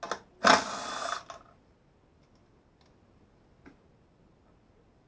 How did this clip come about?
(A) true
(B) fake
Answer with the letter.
A